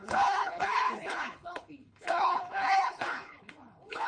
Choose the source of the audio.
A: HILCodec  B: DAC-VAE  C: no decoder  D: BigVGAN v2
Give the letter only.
A